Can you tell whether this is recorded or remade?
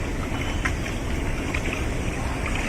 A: recorded